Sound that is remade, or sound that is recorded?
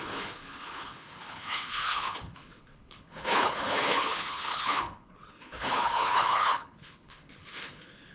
remade